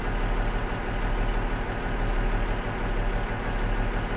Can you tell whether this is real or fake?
real